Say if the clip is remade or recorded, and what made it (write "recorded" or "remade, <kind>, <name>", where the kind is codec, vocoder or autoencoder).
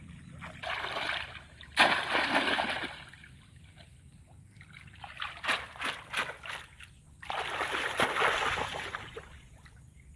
recorded